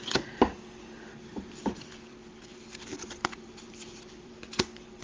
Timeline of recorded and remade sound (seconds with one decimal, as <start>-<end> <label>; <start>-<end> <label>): 0.0-1.3 recorded; 1.3-4.3 remade; 4.3-5.0 recorded